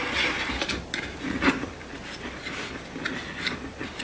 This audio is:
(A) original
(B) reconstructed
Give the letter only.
A